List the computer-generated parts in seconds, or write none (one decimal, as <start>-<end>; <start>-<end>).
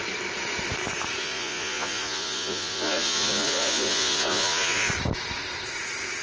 1.2-4.9